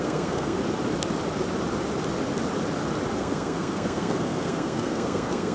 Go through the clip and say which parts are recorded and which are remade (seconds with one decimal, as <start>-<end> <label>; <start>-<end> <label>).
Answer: 0.0-0.6 remade; 0.6-3.2 recorded; 3.2-5.5 remade